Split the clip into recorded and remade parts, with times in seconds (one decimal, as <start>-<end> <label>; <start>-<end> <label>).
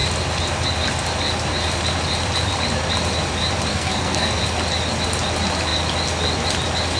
0.0-3.7 recorded; 3.7-4.4 remade; 4.4-7.0 recorded